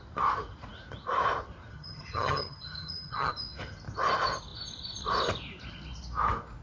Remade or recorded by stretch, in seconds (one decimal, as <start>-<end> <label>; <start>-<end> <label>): 0.0-1.7 recorded; 1.7-3.3 remade; 3.3-6.6 recorded